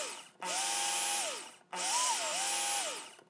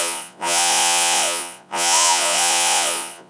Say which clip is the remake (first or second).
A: second